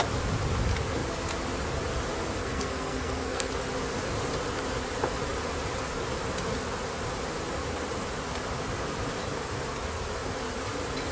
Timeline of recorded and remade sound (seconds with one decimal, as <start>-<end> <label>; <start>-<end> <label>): 0.0-2.4 recorded; 2.4-3.5 remade; 3.5-11.1 recorded